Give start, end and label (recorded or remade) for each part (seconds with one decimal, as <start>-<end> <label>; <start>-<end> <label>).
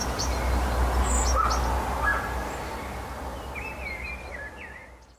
0.0-5.2 recorded